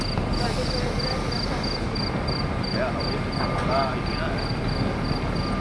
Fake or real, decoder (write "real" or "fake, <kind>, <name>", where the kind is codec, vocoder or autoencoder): real